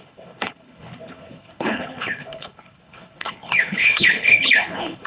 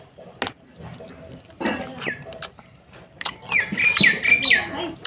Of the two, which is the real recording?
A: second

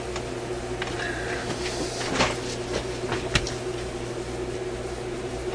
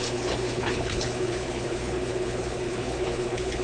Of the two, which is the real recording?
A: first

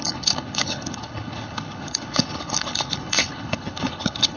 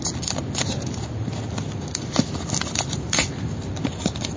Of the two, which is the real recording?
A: second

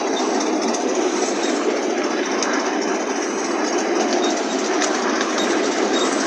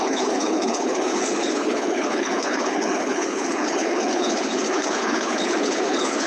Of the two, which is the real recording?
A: first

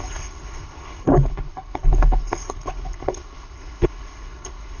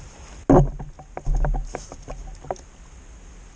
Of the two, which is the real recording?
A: second